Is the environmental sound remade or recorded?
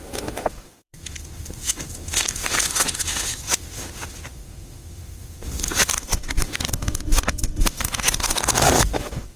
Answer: remade